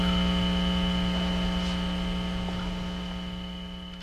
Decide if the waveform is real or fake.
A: real